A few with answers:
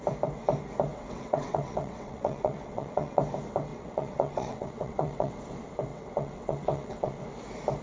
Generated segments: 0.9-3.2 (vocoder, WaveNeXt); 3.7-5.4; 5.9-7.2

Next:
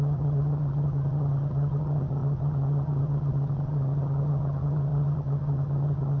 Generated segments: 0.0-6.2 (vocoder, HiFi-GAN)

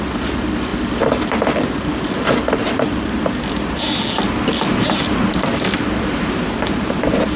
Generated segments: none

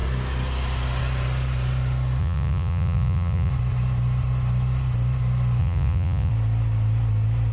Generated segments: 2.2-3.5 (vocoder, Vocos); 5.6-6.3

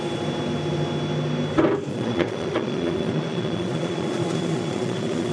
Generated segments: 1.9-5.3 (vocoder, Vocos)

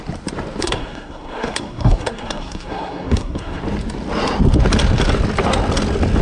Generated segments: 0.6-3.6 (codec, SNAC)